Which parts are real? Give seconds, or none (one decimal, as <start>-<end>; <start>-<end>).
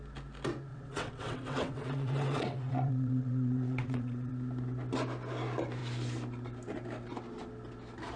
0.0-0.7; 4.3-8.2